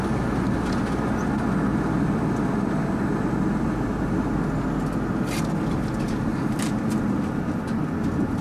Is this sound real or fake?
real